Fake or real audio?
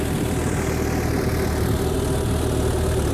real